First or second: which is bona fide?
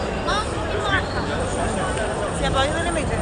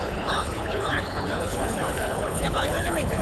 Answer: first